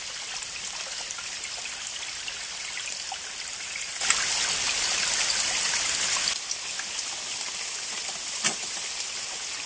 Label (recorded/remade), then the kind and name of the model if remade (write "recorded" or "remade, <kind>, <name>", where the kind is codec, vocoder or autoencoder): recorded